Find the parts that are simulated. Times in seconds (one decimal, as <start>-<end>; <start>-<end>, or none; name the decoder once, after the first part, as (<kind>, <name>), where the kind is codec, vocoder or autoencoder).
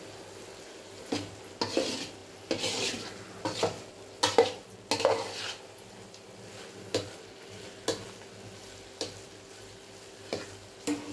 none